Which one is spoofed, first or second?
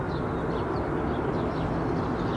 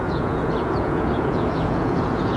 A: second